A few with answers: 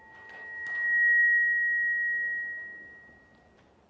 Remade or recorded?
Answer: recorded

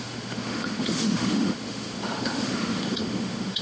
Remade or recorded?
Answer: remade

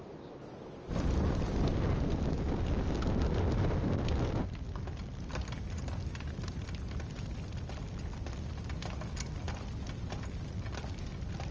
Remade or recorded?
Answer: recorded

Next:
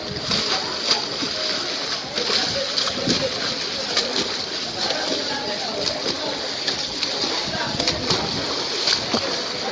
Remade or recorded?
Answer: recorded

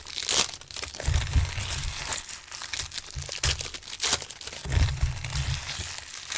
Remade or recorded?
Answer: recorded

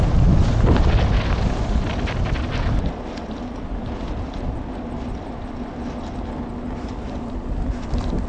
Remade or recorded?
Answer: recorded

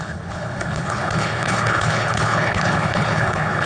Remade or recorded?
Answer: remade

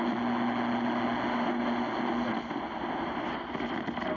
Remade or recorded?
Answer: recorded